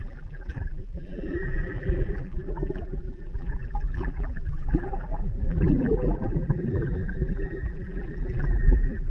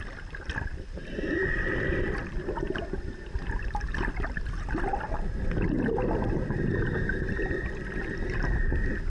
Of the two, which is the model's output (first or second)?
first